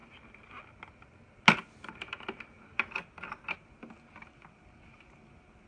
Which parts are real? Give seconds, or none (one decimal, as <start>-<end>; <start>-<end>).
0.0-5.7